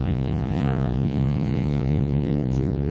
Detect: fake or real fake